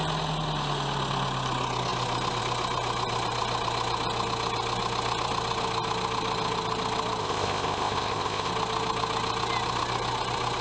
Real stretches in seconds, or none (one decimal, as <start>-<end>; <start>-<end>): 0.0-7.2; 8.5-10.6